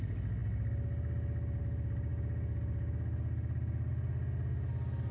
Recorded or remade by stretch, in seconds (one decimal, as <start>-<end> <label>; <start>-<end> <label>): 0.0-5.1 recorded